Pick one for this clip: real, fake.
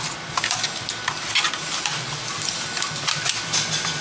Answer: real